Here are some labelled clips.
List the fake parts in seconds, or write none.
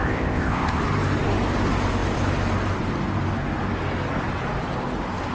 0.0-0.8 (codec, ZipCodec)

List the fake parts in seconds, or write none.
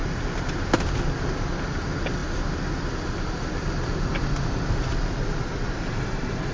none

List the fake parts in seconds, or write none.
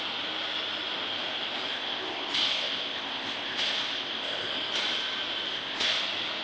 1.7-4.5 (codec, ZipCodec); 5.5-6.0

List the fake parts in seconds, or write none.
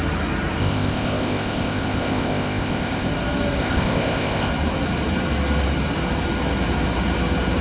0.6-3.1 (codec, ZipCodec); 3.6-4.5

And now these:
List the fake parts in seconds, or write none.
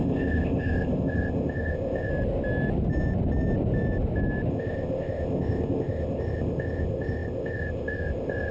0.0-2.1 (codec, ZipCodec); 4.5-8.5